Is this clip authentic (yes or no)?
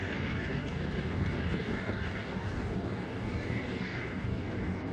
no